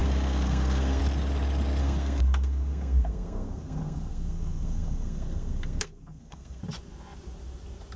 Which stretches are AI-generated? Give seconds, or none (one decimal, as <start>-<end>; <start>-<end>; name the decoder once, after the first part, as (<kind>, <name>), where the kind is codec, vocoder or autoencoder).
0.0-1.0 (codec, SNAC); 1.8-6.6